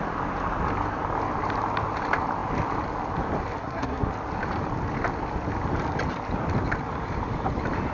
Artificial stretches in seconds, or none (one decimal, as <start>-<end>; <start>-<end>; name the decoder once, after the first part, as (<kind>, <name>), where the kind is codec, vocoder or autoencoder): 3.6-4.1 (codec, SNAC)